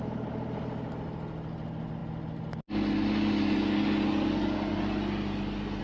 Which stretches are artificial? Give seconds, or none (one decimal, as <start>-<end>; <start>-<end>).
none

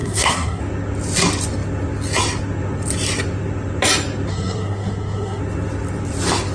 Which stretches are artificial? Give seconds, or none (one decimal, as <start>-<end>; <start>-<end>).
0.0-0.6; 4.3-5.4